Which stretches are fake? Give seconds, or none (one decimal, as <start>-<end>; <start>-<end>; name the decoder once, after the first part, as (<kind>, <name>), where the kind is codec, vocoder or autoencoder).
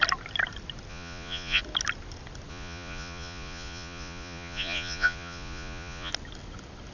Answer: 0.9-1.6 (vocoder, Vocos); 2.5-6.1